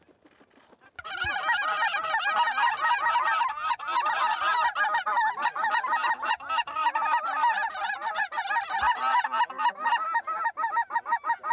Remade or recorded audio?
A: recorded